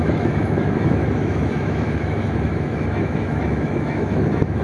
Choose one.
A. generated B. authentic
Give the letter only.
A